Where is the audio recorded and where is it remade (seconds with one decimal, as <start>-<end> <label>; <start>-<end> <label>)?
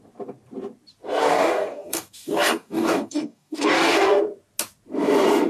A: 0.0-1.2 recorded; 1.2-4.2 remade; 4.2-5.5 recorded